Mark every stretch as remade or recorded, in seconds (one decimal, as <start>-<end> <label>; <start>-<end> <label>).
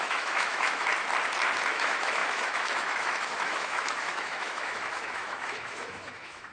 0.0-0.9 remade; 0.9-1.7 recorded; 1.7-6.5 remade